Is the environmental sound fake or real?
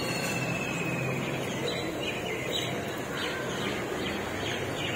real